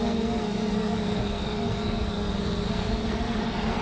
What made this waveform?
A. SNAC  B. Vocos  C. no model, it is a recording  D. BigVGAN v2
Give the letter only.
A